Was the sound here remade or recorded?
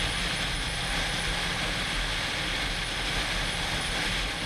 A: recorded